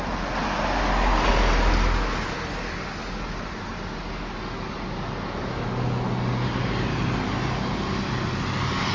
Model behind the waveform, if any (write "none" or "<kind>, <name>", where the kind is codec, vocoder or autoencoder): none